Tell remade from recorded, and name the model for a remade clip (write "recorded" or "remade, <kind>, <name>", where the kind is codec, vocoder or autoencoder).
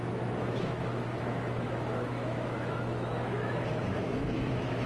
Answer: remade, autoencoder, DAC-VAE